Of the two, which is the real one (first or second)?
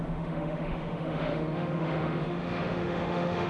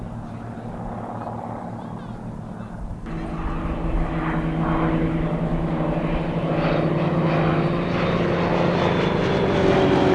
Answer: second